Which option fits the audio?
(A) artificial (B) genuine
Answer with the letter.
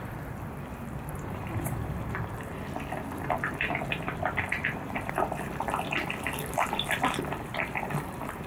A